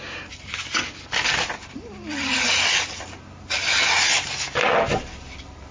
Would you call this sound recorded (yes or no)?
yes